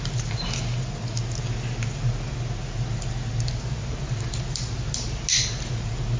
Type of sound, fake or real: real